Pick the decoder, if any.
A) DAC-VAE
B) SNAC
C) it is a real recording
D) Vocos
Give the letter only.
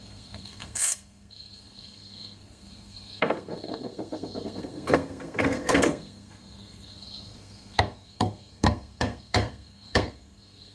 B